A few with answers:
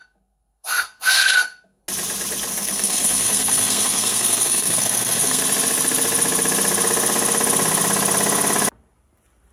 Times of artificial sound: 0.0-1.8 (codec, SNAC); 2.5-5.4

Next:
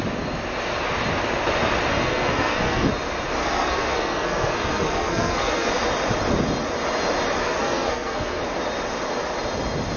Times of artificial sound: 1.9-2.9 (codec, SNAC); 3.4-5.7; 7.4-8.4

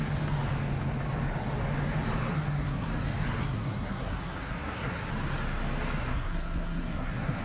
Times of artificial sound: 2.3-2.9 (codec, SNAC); 3.4-5.1; 6.0-7.4

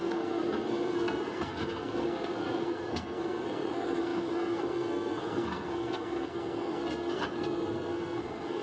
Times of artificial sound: 0.0-8.6 (codec, SNAC)